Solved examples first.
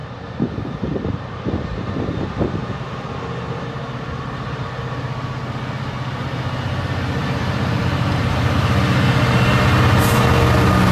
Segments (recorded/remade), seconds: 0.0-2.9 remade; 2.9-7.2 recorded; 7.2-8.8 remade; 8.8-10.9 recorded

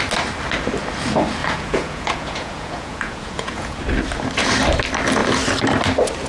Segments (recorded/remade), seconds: 0.0-1.4 recorded; 1.4-3.8 remade; 3.8-6.3 recorded

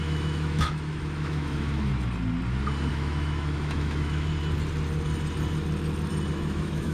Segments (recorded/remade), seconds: 0.0-1.9 remade; 1.9-2.9 recorded; 2.9-4.3 remade; 4.3-6.3 recorded; 6.3-6.9 remade

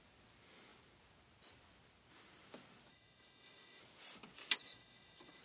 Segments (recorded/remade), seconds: 0.0-2.9 recorded; 2.9-3.8 remade; 3.8-4.6 recorded; 4.6-5.4 remade

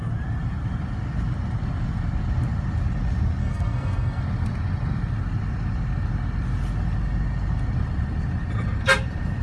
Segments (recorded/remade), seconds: 0.0-3.4 recorded; 3.4-4.2 remade; 4.2-9.4 recorded

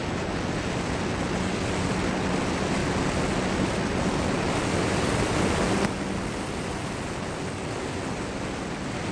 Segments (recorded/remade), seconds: 0.0-9.1 recorded

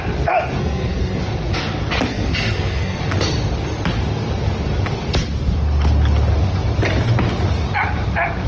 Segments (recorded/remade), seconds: 0.0-0.6 recorded; 0.6-1.2 remade; 1.2-2.1 recorded; 2.1-3.0 remade; 3.0-8.5 recorded

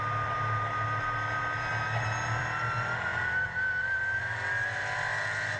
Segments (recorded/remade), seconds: 0.0-5.6 recorded